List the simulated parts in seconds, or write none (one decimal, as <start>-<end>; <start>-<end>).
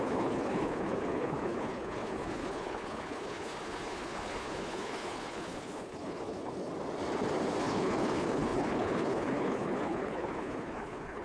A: 0.0-6.7; 7.6-11.2